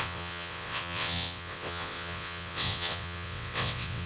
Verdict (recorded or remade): remade